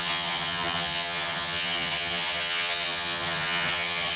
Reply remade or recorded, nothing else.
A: remade